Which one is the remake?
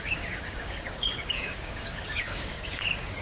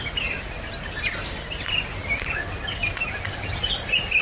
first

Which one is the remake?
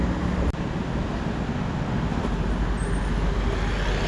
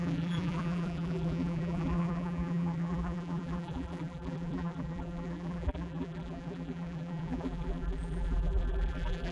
second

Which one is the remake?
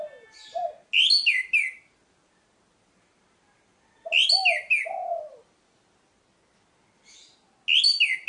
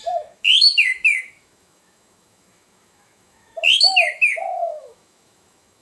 second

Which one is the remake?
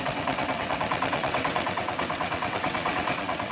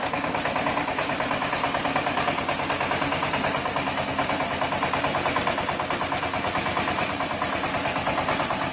first